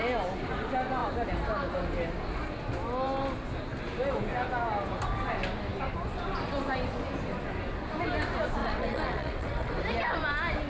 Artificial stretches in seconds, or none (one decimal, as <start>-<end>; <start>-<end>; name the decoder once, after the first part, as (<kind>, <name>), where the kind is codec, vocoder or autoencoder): 8.6-9.7 (vocoder, WaveNeXt)